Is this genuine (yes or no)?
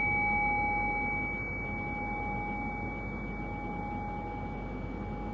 yes